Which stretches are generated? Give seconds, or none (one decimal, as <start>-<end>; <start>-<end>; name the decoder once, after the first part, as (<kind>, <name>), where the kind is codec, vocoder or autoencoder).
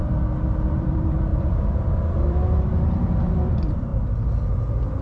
0.6-3.9 (vocoder, BigVGAN v2)